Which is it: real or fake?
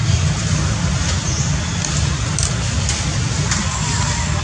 real